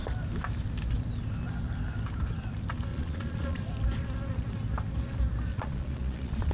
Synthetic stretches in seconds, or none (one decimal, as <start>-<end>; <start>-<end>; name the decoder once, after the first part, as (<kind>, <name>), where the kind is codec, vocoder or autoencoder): 2.9-3.6 (vocoder, Vocos); 5.5-6.5